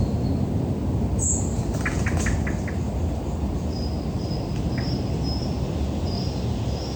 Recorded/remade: recorded